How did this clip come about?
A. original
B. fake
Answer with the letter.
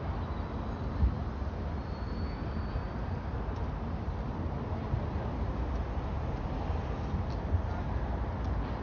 A